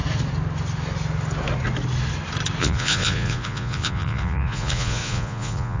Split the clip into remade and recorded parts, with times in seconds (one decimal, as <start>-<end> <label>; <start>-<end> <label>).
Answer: 0.0-2.6 recorded; 2.6-5.8 remade